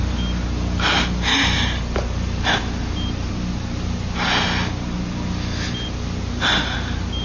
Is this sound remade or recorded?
recorded